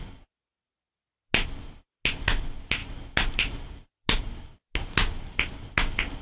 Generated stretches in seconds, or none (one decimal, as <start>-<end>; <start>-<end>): none